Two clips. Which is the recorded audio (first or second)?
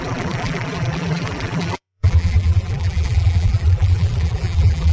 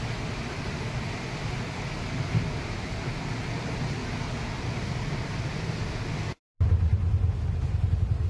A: second